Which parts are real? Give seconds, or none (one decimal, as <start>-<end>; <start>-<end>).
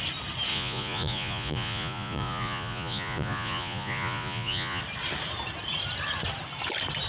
0.0-0.5; 4.8-7.1